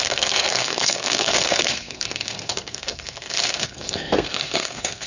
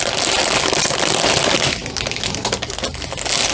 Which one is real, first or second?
second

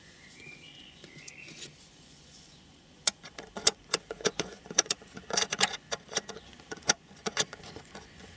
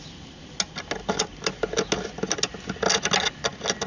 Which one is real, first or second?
second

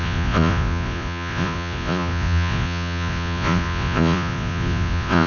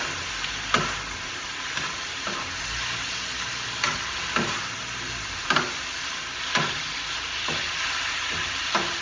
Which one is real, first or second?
second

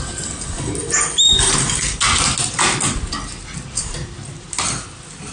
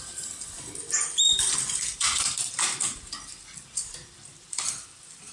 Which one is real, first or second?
first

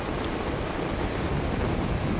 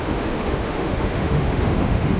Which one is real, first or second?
first